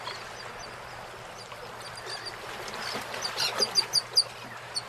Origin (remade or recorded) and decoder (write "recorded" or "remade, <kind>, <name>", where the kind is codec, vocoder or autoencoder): recorded